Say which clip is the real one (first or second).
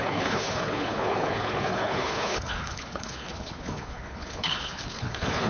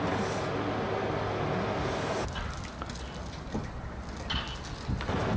second